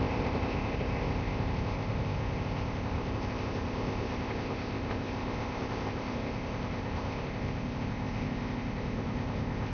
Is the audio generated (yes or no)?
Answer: yes